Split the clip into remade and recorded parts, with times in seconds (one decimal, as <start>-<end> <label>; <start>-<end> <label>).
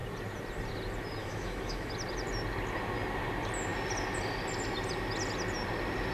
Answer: 0.0-1.2 recorded; 1.2-1.9 remade; 1.9-6.1 recorded